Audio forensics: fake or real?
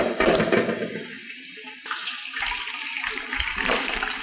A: fake